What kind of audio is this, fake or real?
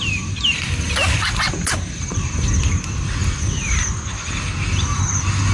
real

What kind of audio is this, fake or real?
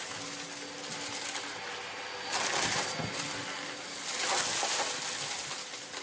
real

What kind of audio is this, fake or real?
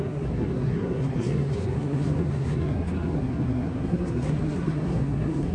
fake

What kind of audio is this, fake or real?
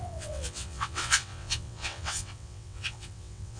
fake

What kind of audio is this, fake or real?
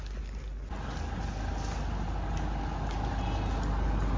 real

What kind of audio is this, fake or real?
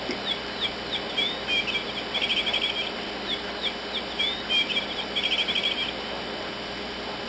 real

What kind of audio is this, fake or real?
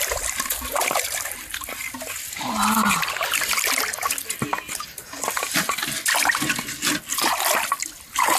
real